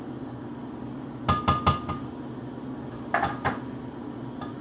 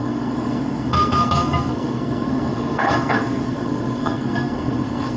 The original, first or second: first